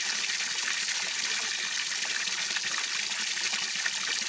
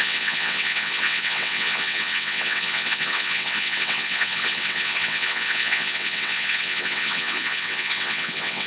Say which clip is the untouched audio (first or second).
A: first